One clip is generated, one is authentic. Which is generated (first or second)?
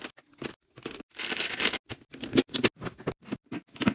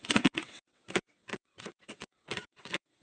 second